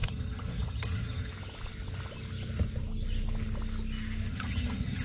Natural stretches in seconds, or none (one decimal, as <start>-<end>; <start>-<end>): 1.3-4.3